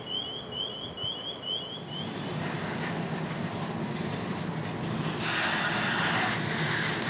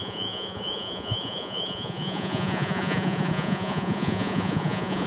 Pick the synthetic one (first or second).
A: second